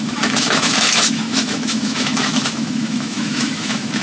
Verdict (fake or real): fake